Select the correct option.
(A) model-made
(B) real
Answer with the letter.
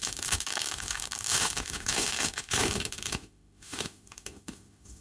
A